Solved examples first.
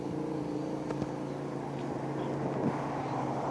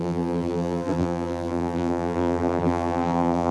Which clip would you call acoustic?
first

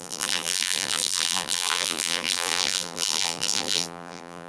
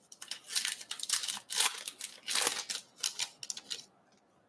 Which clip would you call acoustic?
second